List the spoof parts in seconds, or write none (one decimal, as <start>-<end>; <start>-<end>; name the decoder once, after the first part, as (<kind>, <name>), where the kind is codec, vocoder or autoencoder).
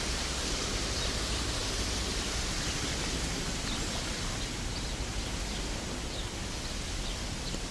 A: none